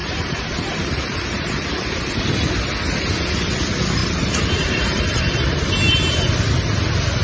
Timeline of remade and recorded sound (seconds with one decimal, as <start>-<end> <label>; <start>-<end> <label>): 0.0-2.0 remade; 2.0-4.0 recorded; 4.0-5.6 remade; 5.6-7.2 recorded